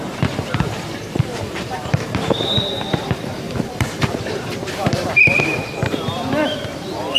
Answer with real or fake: fake